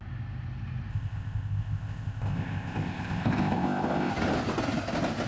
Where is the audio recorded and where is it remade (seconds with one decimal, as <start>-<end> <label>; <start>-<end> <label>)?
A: 0.0-0.9 recorded; 0.9-4.1 remade; 4.1-5.3 recorded